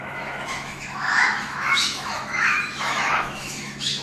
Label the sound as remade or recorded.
remade